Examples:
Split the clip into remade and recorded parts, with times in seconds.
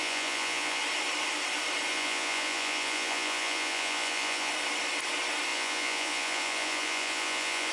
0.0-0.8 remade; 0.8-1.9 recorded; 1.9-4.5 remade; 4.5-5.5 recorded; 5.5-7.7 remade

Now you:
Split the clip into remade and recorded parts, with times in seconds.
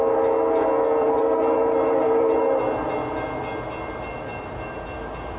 0.0-1.0 recorded; 1.0-2.6 remade; 2.6-5.4 recorded